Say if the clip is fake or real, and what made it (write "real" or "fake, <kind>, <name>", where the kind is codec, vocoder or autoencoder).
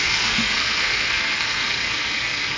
fake, codec, SNAC